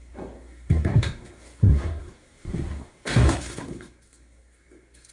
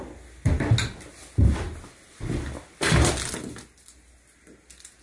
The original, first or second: second